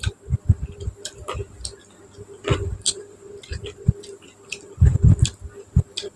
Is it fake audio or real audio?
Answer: real